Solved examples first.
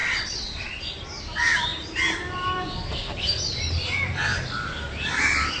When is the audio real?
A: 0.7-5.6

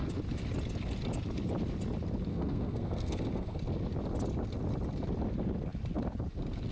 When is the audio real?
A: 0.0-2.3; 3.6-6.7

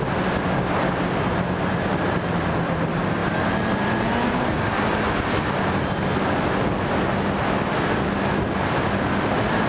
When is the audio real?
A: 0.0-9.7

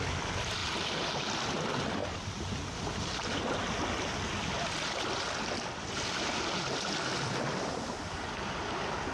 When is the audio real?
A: 0.0-0.6; 1.2-9.1

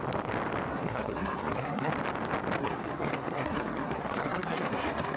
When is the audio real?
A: 0.0-0.7; 1.9-2.6

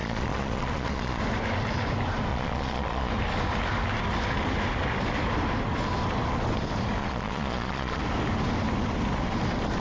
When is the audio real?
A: 1.2-2.3; 3.1-7.0; 8.0-9.8